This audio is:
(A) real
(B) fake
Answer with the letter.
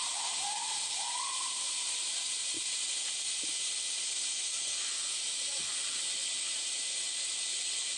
B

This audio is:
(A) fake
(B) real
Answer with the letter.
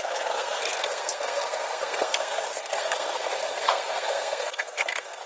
A